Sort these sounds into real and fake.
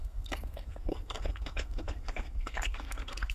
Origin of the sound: fake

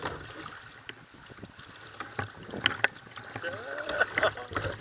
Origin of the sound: real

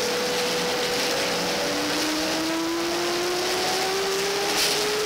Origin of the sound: real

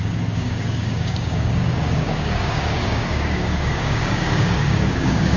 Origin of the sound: fake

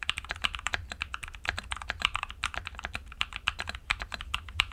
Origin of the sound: fake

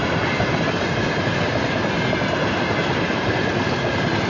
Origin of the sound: real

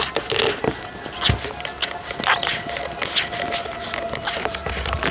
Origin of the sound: real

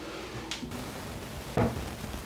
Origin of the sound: real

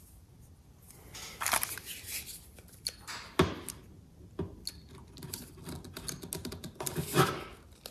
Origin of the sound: real